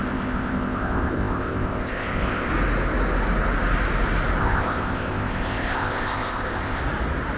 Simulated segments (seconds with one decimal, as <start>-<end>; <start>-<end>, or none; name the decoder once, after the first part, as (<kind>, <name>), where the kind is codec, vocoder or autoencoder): 0.0-2.5 (codec, ZipCodec); 4.4-6.8